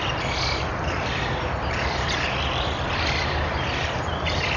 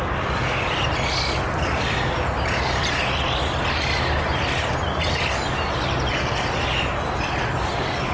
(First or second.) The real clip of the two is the second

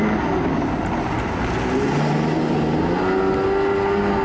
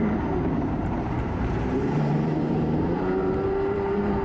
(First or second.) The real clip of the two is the first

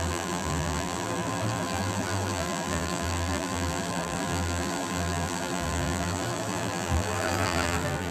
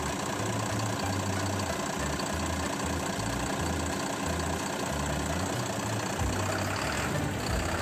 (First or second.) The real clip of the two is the second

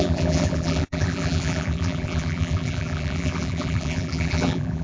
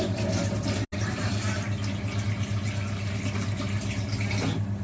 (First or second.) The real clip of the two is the second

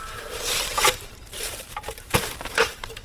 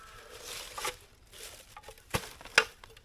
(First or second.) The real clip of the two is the second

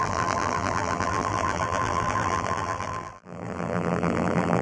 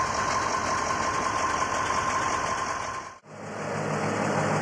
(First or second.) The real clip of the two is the second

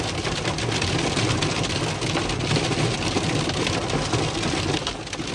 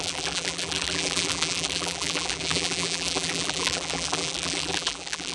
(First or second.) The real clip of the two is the first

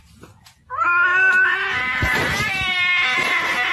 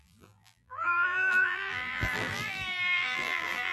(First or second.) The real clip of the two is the first